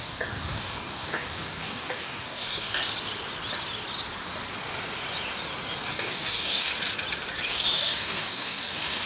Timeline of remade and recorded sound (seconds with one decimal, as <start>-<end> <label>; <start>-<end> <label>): 0.0-2.8 remade; 2.8-5.9 recorded; 5.9-6.7 remade; 6.7-7.5 recorded; 7.5-9.1 remade